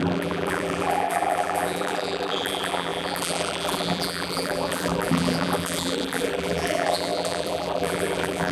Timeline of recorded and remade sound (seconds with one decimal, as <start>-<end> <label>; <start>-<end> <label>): 0.0-8.5 remade